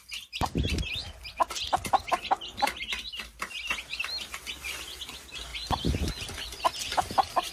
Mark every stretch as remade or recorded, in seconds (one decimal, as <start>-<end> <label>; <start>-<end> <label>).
0.0-7.5 recorded